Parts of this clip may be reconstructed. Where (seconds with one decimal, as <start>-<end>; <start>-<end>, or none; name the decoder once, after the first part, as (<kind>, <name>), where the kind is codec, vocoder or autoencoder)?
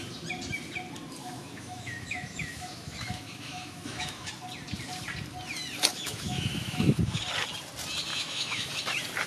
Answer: 1.2-4.3 (autoencoder, DAC-VAE); 5.9-7.2; 8.1-8.7